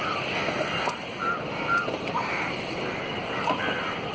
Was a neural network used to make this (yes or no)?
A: no